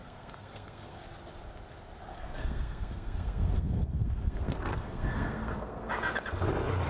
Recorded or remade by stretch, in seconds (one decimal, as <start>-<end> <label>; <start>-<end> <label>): 0.0-1.0 remade; 1.0-2.1 recorded; 2.1-5.9 remade; 5.9-6.9 recorded